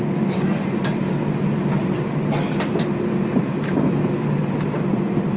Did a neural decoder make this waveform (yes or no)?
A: no